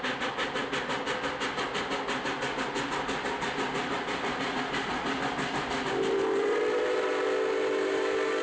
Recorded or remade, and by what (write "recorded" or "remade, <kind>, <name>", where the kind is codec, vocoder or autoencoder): recorded